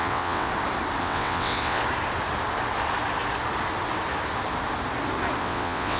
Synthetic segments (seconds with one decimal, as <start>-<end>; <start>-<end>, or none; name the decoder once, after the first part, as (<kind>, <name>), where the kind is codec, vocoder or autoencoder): 0.0-0.5 (vocoder, WaveNeXt); 1.0-1.8; 5.4-6.0